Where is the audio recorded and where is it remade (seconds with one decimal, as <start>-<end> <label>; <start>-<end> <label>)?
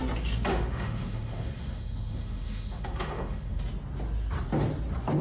0.0-0.5 recorded; 0.5-3.6 remade; 3.6-5.2 recorded